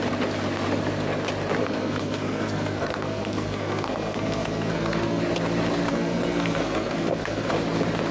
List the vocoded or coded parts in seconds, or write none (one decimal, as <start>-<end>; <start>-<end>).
1.6-5.2; 5.9-7.5